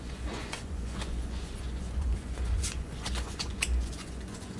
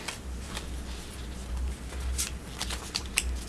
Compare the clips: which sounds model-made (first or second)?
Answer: first